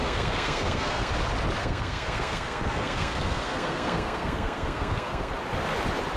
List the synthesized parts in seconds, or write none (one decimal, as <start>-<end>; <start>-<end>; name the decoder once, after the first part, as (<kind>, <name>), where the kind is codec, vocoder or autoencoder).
0.0-1.1 (codec, SNAC); 1.6-5.3